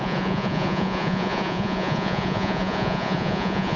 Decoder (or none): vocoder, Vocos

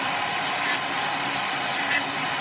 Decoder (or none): none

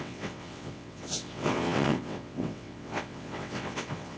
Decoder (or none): vocoder, WaveNeXt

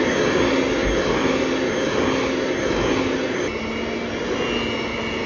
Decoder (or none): none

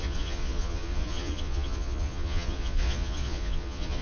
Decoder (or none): vocoder, Vocos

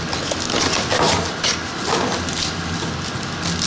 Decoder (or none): none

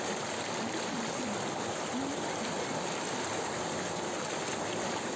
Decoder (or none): none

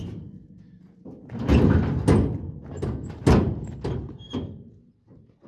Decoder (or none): none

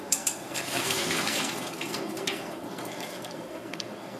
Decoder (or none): codec, SNAC